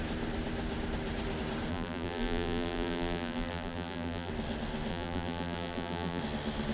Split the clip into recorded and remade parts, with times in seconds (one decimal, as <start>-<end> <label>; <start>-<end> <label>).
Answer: 0.0-1.7 recorded; 1.7-4.3 remade; 4.3-4.9 recorded; 4.9-6.2 remade; 6.2-6.7 recorded